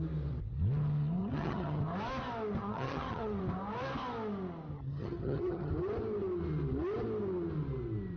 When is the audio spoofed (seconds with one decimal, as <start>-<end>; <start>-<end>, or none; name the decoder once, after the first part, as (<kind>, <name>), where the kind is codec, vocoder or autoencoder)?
1.2-1.8 (vocoder, HiFi-GAN); 2.6-3.4; 4.7-5.7